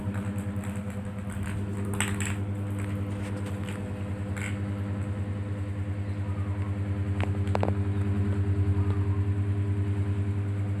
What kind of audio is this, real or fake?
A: real